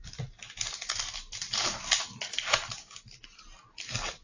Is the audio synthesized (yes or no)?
no